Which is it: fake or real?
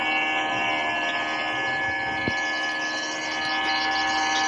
real